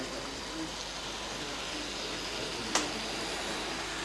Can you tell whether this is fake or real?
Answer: real